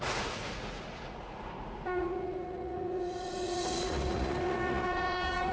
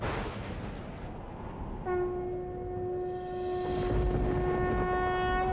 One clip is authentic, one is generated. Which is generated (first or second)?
first